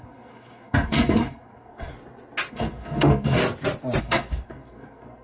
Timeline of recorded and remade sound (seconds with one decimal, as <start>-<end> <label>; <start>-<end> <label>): 0.0-1.9 remade; 1.9-2.5 recorded; 2.5-3.4 remade; 3.4-4.0 recorded; 4.0-5.2 remade